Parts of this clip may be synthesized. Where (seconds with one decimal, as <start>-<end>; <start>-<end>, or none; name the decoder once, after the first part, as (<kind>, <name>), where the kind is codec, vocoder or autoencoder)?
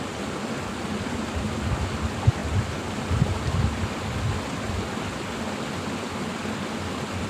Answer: none